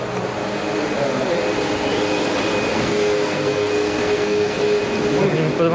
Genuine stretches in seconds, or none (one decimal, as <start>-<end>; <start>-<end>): 0.0-2.7; 4.8-5.7